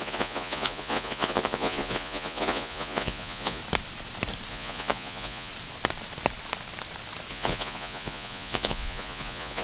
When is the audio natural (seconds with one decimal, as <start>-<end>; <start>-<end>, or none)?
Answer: 3.6-4.5; 5.5-7.3